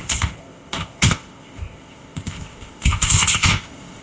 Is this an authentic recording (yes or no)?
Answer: no